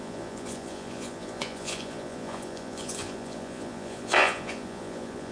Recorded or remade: remade